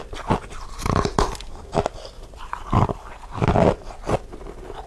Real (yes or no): yes